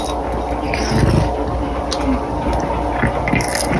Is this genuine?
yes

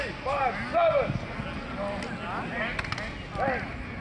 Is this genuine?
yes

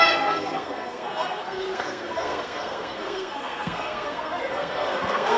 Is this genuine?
no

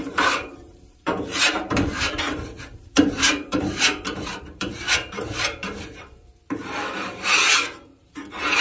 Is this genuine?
no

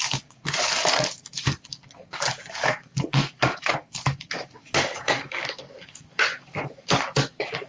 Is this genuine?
no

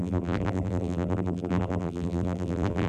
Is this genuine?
no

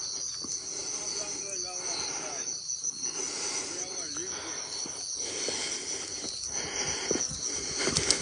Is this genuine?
yes